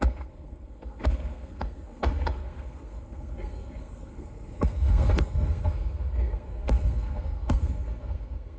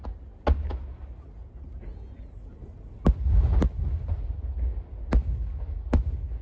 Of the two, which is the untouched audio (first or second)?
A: second